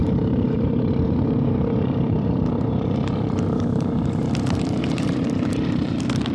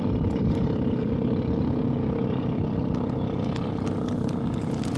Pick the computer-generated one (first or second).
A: first